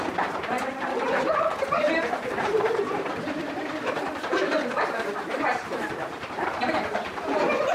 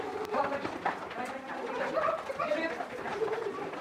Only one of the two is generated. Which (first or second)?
first